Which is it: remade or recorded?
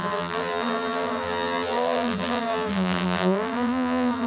remade